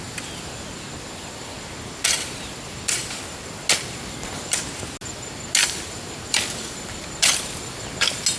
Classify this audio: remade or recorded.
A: recorded